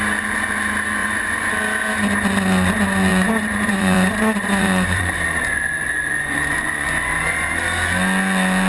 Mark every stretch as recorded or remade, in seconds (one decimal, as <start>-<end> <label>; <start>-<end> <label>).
0.0-1.0 recorded; 1.0-1.5 remade; 1.5-3.1 recorded; 3.1-7.5 remade; 7.5-8.7 recorded